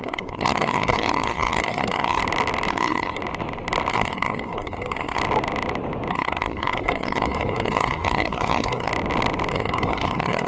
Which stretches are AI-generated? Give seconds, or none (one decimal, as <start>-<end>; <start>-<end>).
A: 0.0-2.2; 2.7-3.2; 3.9-5.2; 6.1-8.9; 9.5-10.5